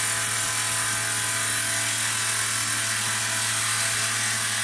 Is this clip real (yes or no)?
yes